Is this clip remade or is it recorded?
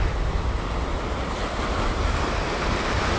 recorded